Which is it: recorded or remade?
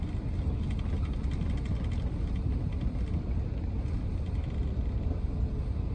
recorded